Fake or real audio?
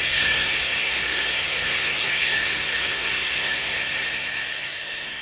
fake